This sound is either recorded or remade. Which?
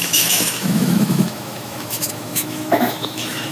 remade